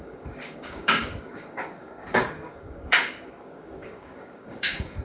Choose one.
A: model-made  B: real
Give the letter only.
A